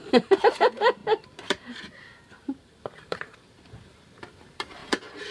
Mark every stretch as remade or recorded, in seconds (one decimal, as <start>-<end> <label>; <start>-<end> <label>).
0.0-5.3 remade

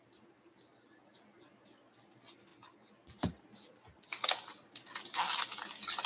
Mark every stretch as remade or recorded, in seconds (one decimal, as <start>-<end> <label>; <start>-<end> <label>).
0.0-6.1 recorded

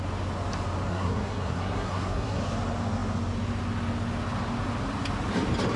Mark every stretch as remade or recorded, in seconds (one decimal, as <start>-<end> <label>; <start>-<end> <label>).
0.0-0.9 recorded; 0.9-2.4 remade; 2.4-5.8 recorded

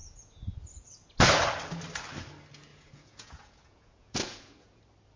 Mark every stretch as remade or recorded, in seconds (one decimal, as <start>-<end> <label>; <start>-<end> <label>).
0.0-1.3 remade; 1.3-2.7 recorded; 2.7-4.8 remade; 4.8-5.2 recorded

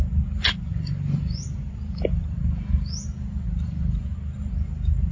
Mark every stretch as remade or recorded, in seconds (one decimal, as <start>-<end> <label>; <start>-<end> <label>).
0.0-0.7 recorded; 0.7-2.4 remade; 2.4-5.1 recorded

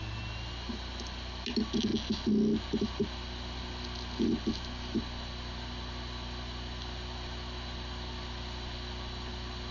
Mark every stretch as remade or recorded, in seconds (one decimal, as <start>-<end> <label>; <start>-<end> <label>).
0.0-9.7 recorded

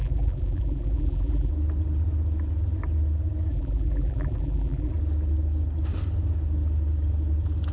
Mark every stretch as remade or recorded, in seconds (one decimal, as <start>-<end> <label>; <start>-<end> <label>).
0.0-1.5 remade; 1.5-3.5 recorded; 3.5-4.9 remade; 4.9-7.7 recorded

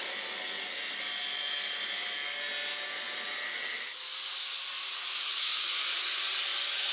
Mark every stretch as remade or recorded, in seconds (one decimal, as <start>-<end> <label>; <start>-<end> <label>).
0.0-4.8 recorded; 4.8-5.6 remade; 5.6-6.9 recorded